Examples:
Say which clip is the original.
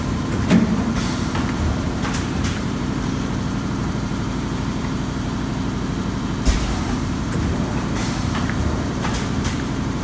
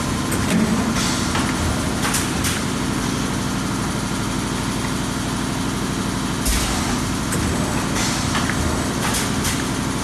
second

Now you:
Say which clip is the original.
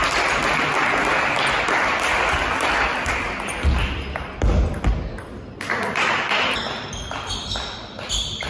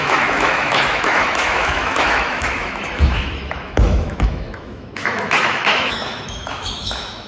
first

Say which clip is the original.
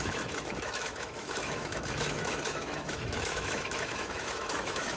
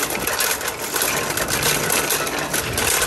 second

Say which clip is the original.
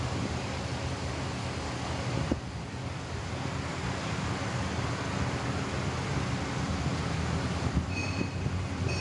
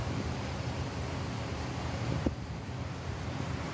first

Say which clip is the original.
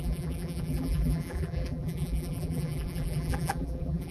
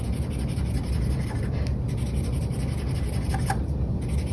second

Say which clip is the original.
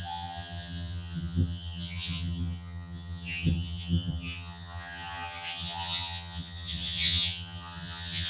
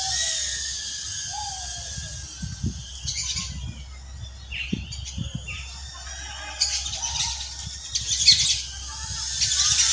second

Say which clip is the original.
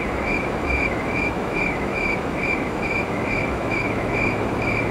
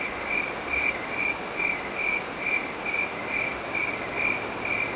second